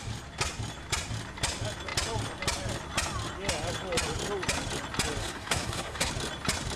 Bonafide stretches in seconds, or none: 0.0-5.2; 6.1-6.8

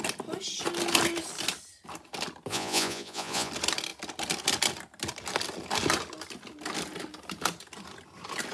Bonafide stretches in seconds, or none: 0.0-2.5; 3.5-8.5

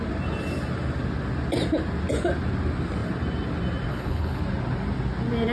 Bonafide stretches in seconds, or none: 0.0-3.9; 4.4-5.5

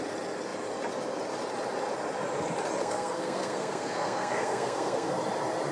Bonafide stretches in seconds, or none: 0.0-2.8; 5.2-5.7

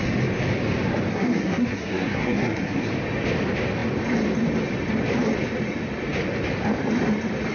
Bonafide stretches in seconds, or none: 0.0-1.1; 2.9-7.5